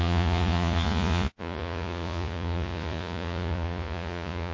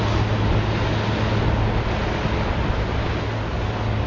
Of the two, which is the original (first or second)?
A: second